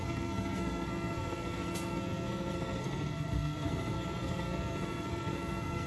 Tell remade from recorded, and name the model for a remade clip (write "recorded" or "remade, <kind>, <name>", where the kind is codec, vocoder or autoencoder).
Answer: remade, codec, SNAC